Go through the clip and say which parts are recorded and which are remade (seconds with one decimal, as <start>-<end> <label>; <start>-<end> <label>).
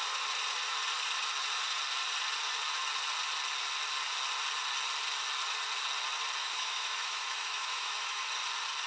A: 0.0-6.4 recorded; 6.4-8.2 remade; 8.2-8.9 recorded